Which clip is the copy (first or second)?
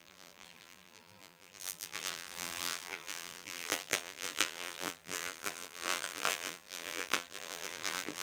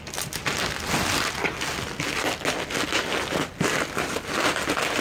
first